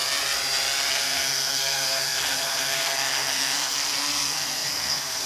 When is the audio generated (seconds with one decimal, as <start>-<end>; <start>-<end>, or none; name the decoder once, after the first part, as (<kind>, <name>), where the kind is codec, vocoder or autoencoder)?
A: 0.9-5.3 (codec, SNAC)